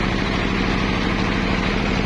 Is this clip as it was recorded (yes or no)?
yes